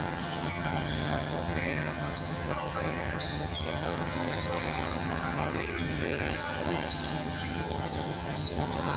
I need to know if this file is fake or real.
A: fake